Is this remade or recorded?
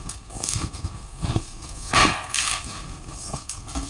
remade